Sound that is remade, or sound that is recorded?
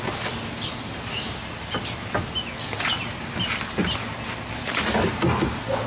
recorded